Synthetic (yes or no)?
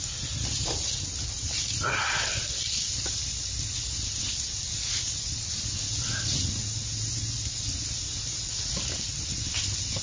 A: no